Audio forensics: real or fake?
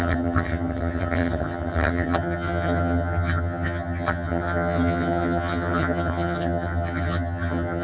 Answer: fake